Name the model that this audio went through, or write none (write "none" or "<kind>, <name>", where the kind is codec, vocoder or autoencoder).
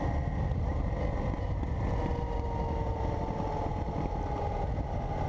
none